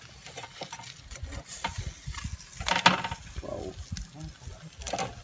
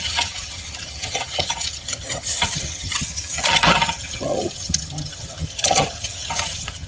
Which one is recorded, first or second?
first